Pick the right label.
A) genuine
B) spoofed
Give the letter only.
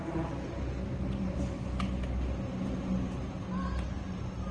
A